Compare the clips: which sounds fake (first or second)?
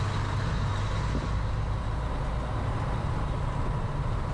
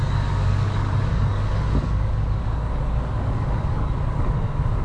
second